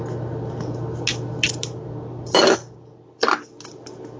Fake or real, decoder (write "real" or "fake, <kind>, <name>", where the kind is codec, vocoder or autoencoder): real